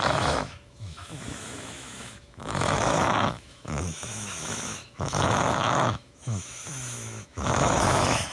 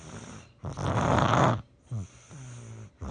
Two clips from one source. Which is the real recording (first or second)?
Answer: second